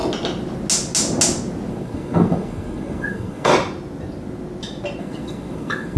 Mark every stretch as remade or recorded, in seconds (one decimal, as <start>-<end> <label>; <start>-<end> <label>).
0.0-1.7 recorded; 1.7-3.5 remade; 3.5-5.0 recorded; 5.0-6.0 remade